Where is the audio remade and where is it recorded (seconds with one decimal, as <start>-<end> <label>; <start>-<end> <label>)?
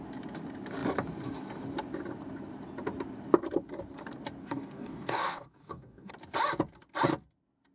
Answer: 0.0-4.4 recorded; 4.4-6.1 remade; 6.1-7.7 recorded